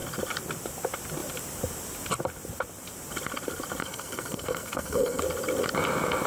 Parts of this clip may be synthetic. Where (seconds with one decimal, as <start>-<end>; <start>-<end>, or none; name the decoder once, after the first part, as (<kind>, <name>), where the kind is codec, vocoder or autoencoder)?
3.8-5.2 (codec, SNAC)